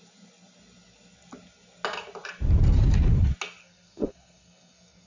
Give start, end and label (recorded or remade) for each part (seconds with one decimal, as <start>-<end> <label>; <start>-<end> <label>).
0.0-3.6 recorded; 3.6-5.1 remade

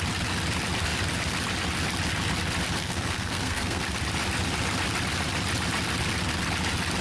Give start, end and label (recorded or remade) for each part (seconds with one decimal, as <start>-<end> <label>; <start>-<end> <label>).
0.0-2.8 recorded; 2.8-3.8 remade; 3.8-7.0 recorded

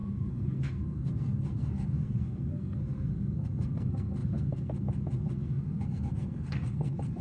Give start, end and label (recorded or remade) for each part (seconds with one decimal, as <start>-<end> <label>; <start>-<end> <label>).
0.0-7.2 remade

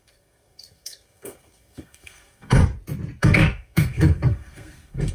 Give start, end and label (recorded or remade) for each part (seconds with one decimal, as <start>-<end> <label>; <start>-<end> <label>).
0.0-2.6 remade; 2.6-3.2 recorded; 3.2-5.1 remade

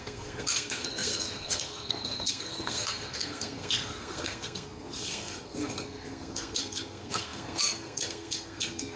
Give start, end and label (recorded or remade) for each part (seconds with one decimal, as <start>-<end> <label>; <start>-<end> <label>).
0.0-9.0 remade

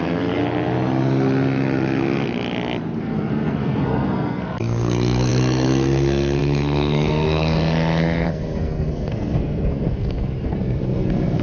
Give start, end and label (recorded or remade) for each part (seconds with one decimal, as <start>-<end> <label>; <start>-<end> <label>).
0.0-0.4 remade; 0.4-3.0 recorded; 3.0-11.4 remade